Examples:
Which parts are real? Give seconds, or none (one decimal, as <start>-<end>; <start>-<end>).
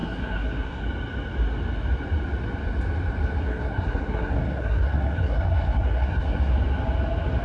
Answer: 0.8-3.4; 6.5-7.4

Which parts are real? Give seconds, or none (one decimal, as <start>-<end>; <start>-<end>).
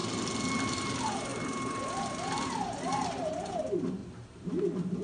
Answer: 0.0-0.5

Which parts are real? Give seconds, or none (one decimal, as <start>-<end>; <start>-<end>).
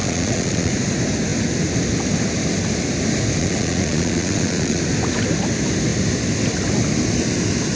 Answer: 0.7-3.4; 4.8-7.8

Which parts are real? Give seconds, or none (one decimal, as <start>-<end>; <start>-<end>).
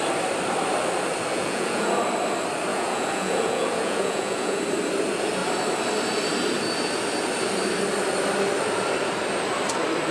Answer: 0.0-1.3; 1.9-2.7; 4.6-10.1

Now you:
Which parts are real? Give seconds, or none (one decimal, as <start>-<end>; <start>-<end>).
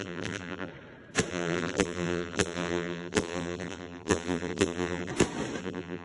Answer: 0.7-1.3; 5.1-5.6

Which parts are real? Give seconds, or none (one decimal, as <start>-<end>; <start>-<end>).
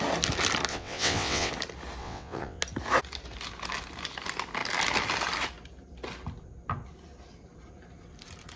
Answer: 0.0-0.7; 1.5-2.0; 2.6-8.6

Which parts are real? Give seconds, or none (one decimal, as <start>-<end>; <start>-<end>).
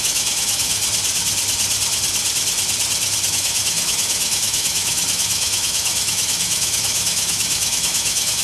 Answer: 0.8-3.3